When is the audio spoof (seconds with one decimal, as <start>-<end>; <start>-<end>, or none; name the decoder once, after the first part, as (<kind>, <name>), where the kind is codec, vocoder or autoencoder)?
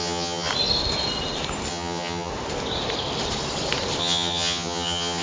0.0-0.5 (vocoder, HiFi-GAN); 1.7-2.3; 4.0-5.2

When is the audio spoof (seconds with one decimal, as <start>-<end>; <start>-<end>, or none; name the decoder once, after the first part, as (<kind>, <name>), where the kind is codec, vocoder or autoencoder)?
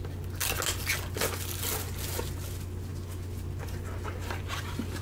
none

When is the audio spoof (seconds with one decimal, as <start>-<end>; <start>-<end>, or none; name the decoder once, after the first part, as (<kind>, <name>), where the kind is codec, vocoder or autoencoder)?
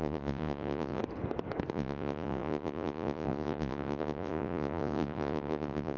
0.0-1.0 (vocoder, Vocos); 1.7-6.0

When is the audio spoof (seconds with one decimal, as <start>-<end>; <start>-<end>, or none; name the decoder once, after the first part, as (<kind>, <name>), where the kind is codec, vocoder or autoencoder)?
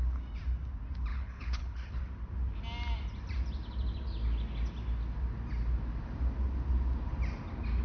1.1-2.0 (codec, HILCodec)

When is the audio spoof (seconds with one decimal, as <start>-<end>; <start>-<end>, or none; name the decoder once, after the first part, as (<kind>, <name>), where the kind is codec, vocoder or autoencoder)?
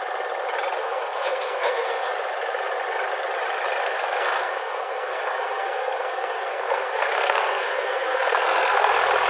0.8-2.1 (codec, SNAC); 3.8-8.9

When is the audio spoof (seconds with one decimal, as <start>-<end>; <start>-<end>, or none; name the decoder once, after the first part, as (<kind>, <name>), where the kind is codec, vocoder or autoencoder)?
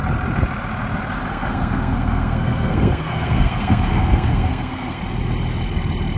1.3-5.0 (codec, SNAC)